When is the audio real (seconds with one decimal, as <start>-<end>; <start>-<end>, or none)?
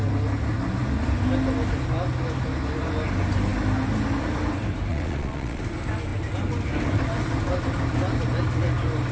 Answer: 0.0-4.9; 5.6-9.1